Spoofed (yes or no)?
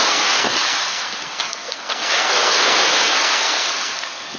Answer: yes